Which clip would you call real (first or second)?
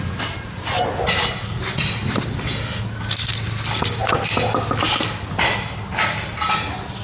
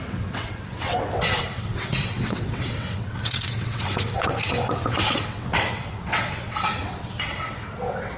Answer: first